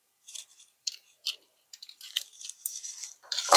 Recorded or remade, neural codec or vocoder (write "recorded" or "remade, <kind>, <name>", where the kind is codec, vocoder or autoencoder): remade, vocoder, BigVGAN v2